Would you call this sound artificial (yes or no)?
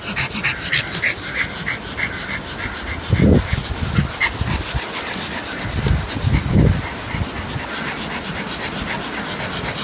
no